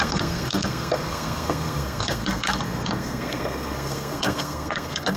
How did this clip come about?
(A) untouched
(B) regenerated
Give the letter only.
B